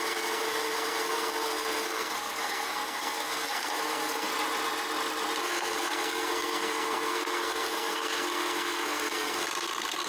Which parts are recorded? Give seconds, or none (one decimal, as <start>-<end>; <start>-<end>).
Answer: 4.3-5.4